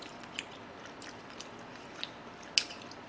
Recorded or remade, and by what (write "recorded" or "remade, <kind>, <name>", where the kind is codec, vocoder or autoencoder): recorded